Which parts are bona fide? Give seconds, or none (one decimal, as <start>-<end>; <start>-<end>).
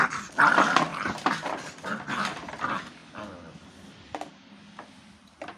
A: 0.0-5.6